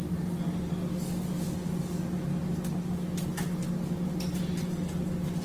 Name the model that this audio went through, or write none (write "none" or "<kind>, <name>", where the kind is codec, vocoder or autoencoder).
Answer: none